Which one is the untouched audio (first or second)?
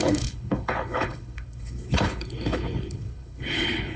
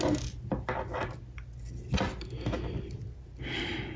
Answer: second